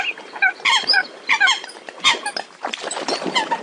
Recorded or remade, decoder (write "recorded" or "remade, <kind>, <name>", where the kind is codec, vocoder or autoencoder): recorded